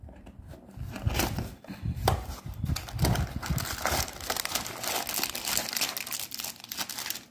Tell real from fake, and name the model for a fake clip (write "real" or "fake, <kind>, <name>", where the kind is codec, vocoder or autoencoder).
real